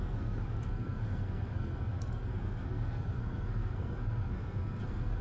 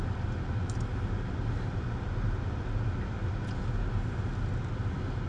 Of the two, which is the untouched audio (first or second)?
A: second